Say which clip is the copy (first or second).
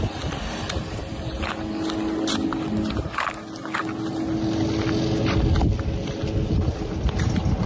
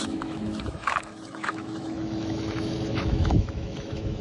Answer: second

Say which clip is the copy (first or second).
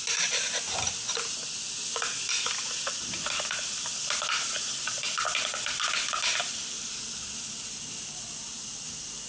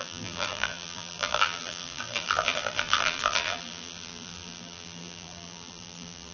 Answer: second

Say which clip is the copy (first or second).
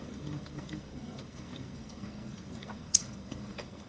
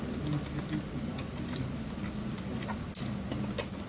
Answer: first